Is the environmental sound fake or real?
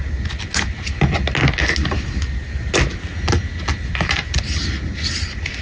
real